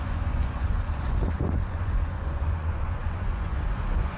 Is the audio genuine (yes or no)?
no